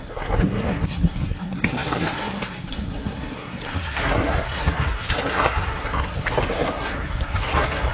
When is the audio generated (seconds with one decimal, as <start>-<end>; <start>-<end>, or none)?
0.0-7.9